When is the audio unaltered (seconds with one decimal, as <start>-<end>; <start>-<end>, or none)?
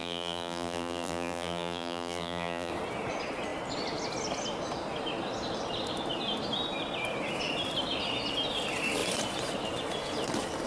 2.7-10.7